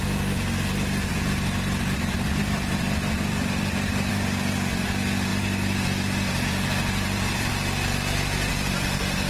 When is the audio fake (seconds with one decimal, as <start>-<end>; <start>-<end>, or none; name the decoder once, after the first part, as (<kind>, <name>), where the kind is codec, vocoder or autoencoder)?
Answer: 1.1-4.1 (vocoder, BigVGAN v2); 5.3-7.5; 8.5-9.3